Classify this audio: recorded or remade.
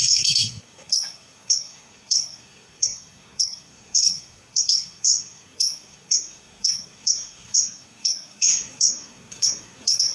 remade